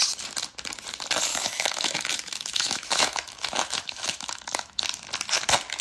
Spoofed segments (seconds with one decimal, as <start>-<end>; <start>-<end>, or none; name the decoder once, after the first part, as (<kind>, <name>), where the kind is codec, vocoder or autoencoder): 1.3-4.8 (autoencoder, DAC-VAE)